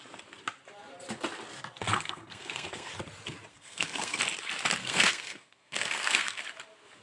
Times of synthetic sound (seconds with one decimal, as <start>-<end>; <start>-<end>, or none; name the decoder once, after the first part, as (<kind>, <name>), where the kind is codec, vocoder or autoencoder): 1.9-2.9 (codec, SNAC); 3.5-4.2; 4.8-6.4